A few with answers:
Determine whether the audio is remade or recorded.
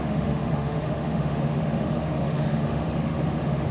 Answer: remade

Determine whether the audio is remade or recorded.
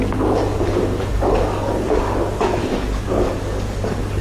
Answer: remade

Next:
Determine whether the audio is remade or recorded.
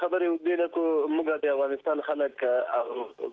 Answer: remade